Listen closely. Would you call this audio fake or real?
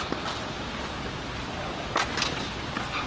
real